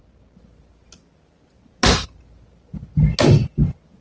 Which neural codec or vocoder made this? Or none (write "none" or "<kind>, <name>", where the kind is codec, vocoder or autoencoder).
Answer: none